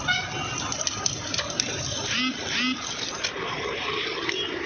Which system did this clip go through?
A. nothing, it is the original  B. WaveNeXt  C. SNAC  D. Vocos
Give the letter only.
A